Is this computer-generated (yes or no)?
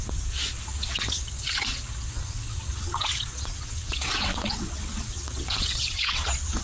yes